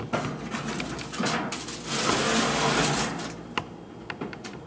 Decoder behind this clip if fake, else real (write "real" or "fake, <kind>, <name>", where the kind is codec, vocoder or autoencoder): real